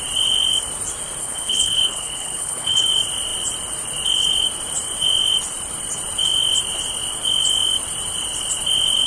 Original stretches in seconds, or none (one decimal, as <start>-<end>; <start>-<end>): 0.0-1.2; 2.9-9.1